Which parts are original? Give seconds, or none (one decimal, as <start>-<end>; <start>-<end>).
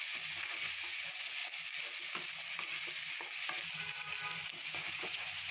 1.4-4.7